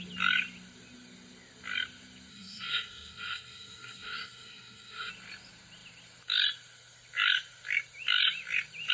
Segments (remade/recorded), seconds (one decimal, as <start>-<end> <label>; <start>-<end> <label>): 0.0-2.3 recorded; 2.3-5.1 remade; 5.1-8.9 recorded

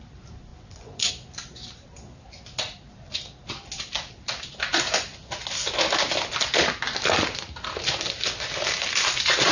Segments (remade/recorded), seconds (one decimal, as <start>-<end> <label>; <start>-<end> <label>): 0.0-0.5 recorded; 0.5-1.1 remade; 1.1-9.5 recorded